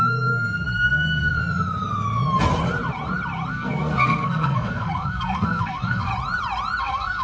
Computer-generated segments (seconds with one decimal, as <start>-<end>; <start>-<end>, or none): 0.0-1.4; 3.5-6.1; 6.8-7.2